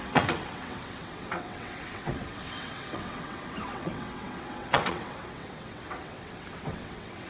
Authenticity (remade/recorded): remade